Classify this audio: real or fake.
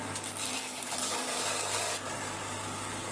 fake